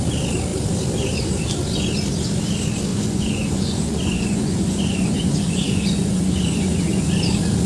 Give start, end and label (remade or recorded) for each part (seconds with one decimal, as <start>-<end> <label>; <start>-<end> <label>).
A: 0.0-2.9 recorded; 2.9-7.1 remade; 7.1-7.7 recorded